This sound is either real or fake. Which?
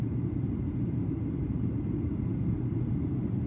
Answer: fake